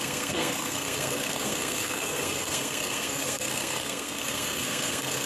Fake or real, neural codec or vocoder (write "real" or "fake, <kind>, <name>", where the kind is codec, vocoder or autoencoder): fake, codec, SNAC